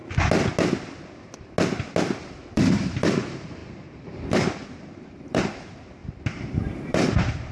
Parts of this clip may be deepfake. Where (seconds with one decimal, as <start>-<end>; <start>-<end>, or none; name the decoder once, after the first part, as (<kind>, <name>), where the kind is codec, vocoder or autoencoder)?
2.5-7.5 (vocoder, BigVGAN v2)